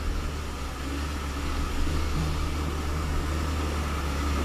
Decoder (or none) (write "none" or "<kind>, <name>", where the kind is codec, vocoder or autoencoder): none